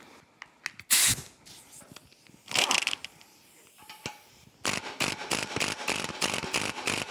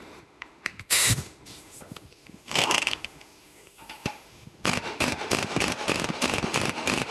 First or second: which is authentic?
first